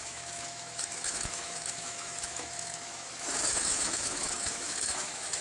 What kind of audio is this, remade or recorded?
remade